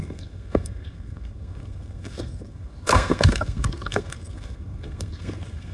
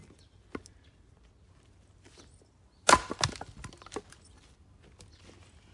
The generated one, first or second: first